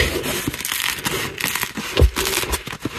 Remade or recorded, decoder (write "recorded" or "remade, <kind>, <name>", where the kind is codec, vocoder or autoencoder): recorded